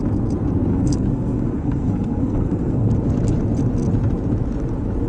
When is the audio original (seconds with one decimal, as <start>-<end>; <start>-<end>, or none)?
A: 0.0-0.7; 2.9-5.1